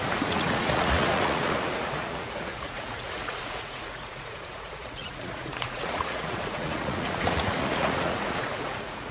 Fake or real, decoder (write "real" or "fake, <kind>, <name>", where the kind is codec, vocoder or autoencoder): fake, vocoder, Vocos